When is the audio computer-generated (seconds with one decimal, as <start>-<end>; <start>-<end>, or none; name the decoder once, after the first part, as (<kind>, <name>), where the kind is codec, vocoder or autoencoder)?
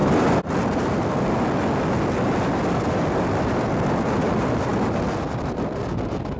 none